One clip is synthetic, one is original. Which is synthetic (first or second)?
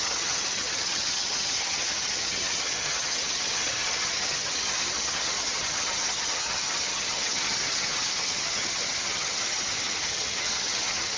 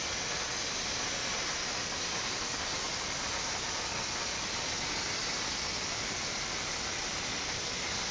first